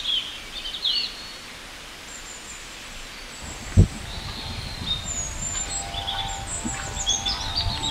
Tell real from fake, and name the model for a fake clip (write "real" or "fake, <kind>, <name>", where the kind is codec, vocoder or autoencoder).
real